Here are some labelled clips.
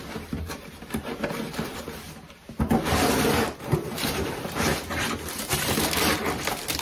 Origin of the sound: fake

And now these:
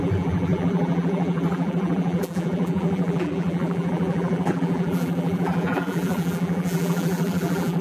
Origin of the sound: fake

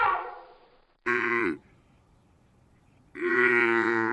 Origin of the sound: fake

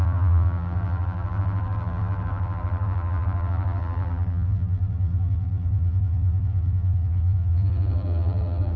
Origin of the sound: fake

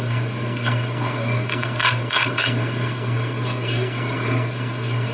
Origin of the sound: fake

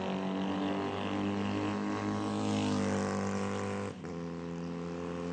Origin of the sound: real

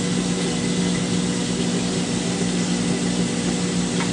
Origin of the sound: real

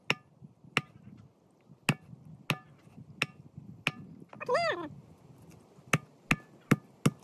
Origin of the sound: real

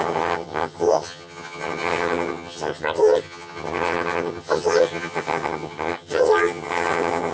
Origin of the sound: fake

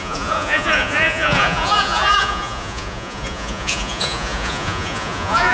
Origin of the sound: fake